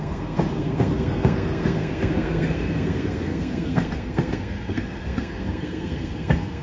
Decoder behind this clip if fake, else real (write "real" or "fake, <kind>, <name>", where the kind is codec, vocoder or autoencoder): fake, codec, SNAC